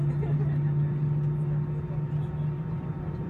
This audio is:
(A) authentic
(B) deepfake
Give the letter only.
A